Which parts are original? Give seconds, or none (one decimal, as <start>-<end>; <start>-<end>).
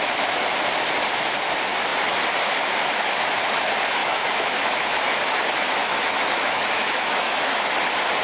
0.0-4.0; 5.2-5.8; 7.7-8.2